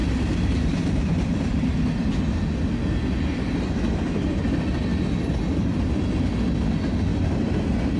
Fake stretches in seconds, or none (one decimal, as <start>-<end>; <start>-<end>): 0.0-2.1; 7.1-8.0